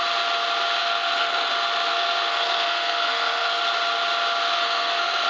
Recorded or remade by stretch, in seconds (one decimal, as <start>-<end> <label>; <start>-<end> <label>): 0.0-0.8 recorded; 0.8-1.5 remade; 1.5-1.9 recorded; 1.9-3.6 remade; 3.6-4.4 recorded; 4.4-5.3 remade